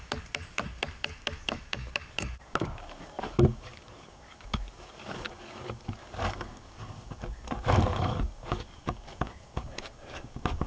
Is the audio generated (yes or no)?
yes